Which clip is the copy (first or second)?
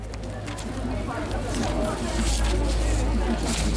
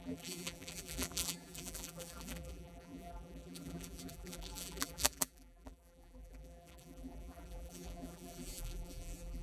second